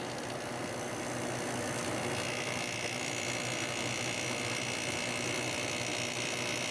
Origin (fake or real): real